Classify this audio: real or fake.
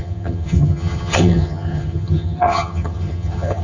fake